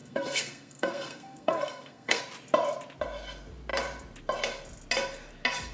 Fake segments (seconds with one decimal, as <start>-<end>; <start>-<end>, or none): 0.0-2.2

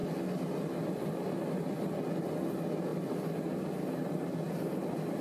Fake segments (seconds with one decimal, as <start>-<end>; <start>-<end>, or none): none

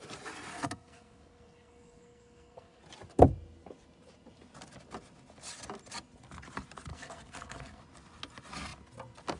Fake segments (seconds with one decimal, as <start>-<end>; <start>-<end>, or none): 0.5-2.8; 6.9-7.8